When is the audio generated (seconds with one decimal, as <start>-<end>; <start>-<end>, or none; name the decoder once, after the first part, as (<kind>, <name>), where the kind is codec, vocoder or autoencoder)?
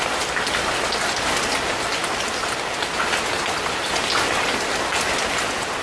none